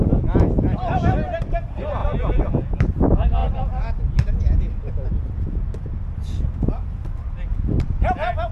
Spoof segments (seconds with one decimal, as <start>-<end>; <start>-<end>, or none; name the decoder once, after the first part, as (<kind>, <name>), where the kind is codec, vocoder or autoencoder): none